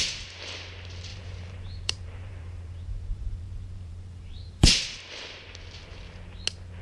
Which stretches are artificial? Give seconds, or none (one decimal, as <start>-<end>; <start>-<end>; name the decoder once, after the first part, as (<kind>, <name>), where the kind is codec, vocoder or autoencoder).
1.1-5.0 (vocoder, BigVGAN v2)